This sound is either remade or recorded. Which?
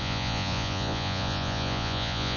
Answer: remade